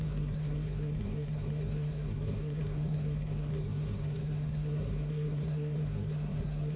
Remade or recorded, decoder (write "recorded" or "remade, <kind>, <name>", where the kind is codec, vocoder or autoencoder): remade, codec, SNAC